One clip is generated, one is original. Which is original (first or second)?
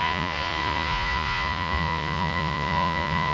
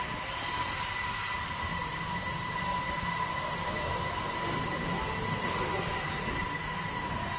second